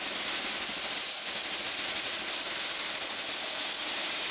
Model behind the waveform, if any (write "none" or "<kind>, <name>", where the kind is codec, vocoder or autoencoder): none